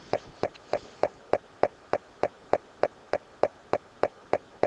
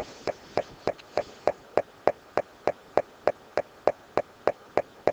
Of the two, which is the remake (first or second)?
first